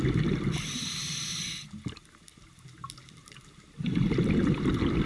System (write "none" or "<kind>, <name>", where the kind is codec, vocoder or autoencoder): none